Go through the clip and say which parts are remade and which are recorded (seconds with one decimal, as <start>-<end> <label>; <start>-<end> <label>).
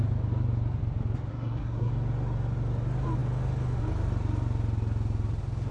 0.0-1.3 recorded; 1.3-1.9 remade; 1.9-5.7 recorded